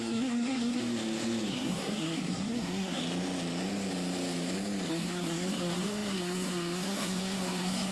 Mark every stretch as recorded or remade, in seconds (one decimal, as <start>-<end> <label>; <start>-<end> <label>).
0.0-0.8 remade; 0.8-1.5 recorded; 1.5-3.0 remade; 3.0-4.9 recorded; 4.9-7.9 remade